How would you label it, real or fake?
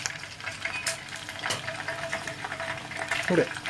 fake